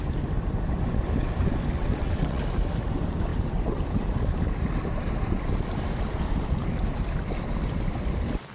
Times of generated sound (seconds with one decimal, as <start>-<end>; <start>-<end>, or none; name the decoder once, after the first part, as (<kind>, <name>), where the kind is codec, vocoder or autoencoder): 1.8-2.4 (vocoder, WaveNeXt)